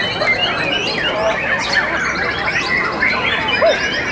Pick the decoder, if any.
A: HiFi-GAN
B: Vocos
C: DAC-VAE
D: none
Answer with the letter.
D